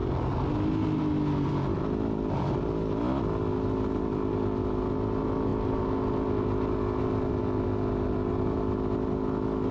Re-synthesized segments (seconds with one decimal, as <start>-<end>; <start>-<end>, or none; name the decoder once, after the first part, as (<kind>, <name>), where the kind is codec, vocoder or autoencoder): none